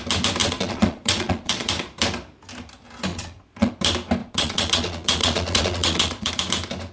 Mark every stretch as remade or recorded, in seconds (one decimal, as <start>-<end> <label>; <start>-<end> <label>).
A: 0.0-0.4 recorded; 0.4-1.7 remade; 1.7-3.1 recorded; 3.1-3.7 remade; 3.7-4.2 recorded; 4.2-6.3 remade; 6.3-6.9 recorded